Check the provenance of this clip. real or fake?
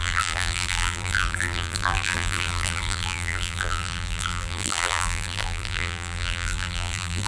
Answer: fake